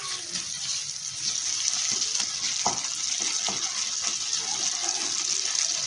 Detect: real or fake real